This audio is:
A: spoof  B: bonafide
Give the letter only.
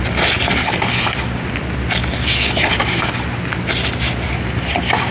B